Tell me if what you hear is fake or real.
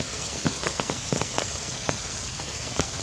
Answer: fake